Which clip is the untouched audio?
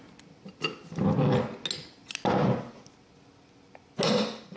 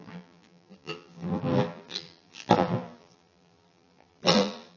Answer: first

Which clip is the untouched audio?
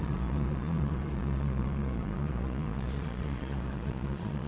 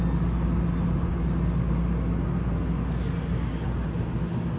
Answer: second